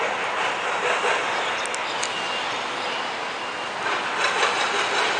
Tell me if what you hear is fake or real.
real